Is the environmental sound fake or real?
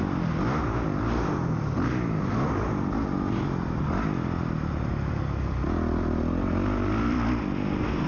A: real